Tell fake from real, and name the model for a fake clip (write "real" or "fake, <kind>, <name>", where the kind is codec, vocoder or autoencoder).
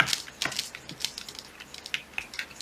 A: real